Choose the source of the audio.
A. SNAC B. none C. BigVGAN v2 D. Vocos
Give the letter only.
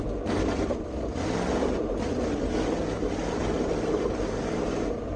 B